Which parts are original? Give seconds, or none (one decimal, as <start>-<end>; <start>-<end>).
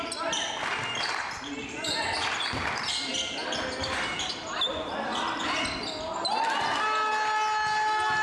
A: 0.0-8.2